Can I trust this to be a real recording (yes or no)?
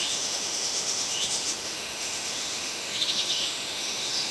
no